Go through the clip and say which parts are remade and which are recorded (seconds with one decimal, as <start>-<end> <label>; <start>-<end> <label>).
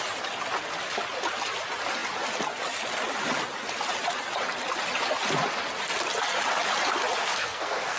0.0-7.2 recorded; 7.2-8.0 remade